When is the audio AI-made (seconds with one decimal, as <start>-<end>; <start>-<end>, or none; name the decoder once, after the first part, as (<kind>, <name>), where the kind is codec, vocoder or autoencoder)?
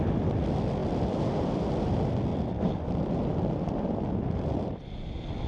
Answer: none